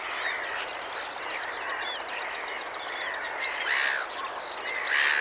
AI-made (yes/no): no